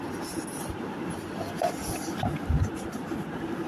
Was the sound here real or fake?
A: real